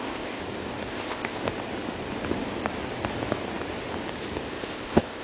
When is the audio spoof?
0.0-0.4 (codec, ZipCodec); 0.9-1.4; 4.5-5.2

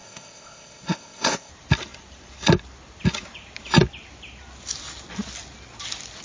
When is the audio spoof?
0.0-1.5 (codec, ZipCodec)

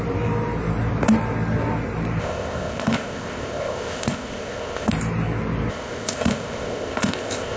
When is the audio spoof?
2.2-4.9 (codec, ZipCodec); 5.7-7.6

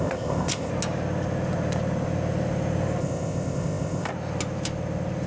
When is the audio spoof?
0.0-0.7 (codec, ZipCodec); 3.0-4.1